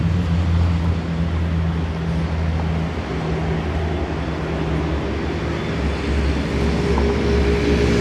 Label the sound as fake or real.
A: real